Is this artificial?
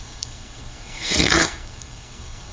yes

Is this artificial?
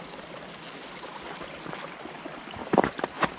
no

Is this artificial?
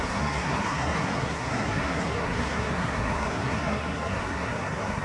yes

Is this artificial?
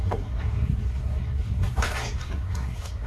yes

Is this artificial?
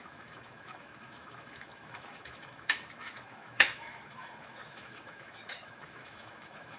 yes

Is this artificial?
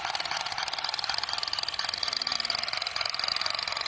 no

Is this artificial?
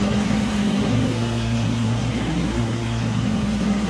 yes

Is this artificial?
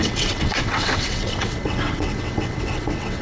yes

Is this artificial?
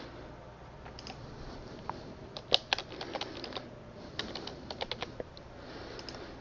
no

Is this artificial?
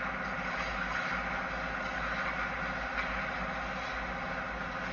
no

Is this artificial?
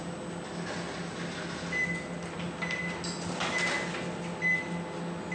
no